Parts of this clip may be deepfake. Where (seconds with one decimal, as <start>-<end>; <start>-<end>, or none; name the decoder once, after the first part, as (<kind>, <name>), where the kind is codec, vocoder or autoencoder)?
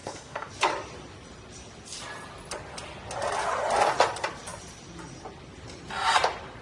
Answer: 0.0-0.5 (codec, SNAC)